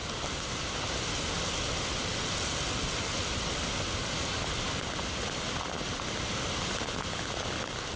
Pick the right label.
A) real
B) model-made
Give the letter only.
A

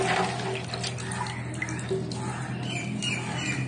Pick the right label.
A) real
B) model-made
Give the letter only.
A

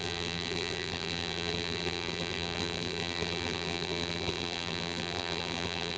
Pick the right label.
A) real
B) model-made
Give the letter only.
B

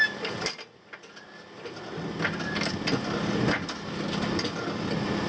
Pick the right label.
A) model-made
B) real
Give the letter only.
B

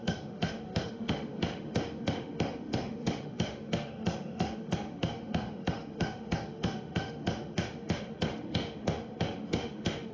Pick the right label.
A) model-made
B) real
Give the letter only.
A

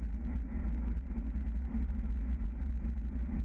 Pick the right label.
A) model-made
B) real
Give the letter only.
B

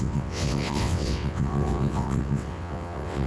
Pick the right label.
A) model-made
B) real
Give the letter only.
A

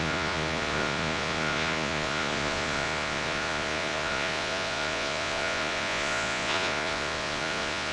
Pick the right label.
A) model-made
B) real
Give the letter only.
A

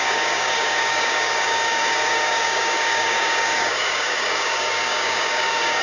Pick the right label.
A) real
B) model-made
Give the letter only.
B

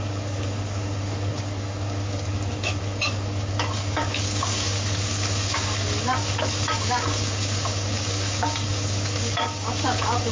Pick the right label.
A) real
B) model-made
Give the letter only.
B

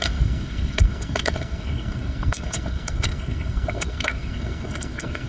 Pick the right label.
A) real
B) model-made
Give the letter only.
B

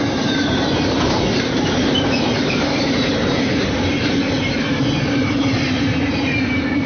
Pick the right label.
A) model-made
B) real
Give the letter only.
A